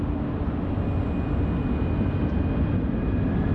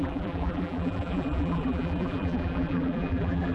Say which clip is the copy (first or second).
second